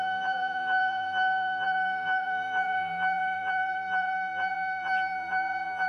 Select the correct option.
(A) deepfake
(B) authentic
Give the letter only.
A